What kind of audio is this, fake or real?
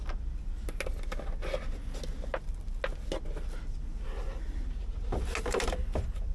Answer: real